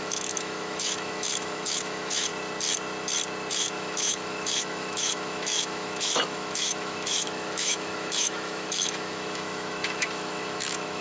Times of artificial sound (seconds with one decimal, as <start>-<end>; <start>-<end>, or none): 0.0-2.3; 3.5-11.0